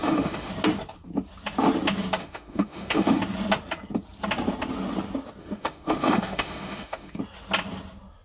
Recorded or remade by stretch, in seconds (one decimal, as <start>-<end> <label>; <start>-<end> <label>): 0.0-0.5 remade; 0.5-2.2 recorded; 2.2-3.2 remade; 3.2-5.4 recorded; 5.4-7.2 remade; 7.2-8.2 recorded